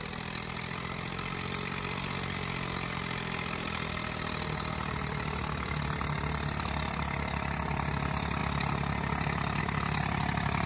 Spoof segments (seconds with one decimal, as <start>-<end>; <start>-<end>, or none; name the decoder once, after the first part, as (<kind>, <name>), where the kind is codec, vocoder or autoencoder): none